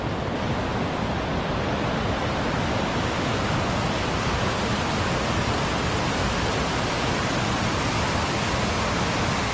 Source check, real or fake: real